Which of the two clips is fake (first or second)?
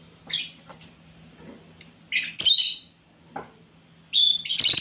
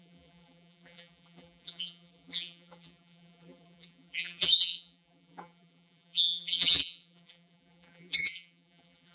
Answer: second